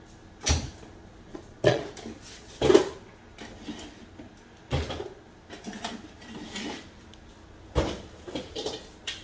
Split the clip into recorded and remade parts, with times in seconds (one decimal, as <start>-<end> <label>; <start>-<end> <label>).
0.0-1.3 recorded; 1.3-1.8 remade; 1.8-9.2 recorded